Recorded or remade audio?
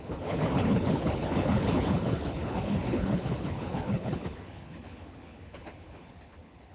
remade